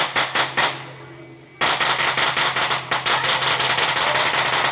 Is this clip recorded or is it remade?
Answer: recorded